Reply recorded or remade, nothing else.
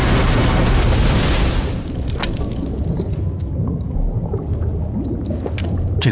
recorded